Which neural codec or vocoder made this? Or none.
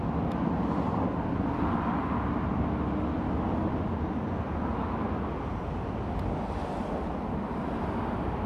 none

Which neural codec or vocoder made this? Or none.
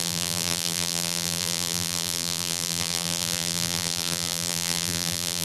vocoder, BigVGAN v2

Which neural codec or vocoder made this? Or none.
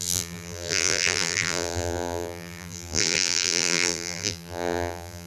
vocoder, BigVGAN v2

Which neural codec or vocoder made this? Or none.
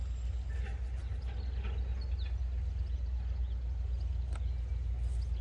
none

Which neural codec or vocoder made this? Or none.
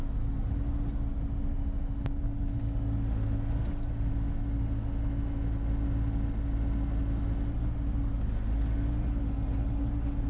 none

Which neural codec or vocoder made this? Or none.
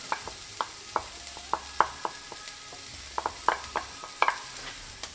none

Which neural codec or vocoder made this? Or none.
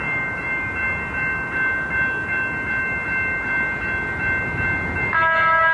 none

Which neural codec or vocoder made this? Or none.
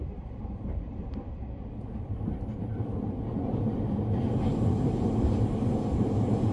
vocoder, BigVGAN v2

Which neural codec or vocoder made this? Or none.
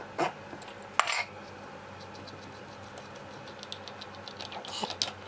none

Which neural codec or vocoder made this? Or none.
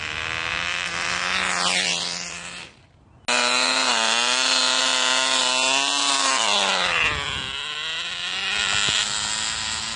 none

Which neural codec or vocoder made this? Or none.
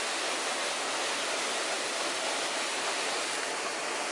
none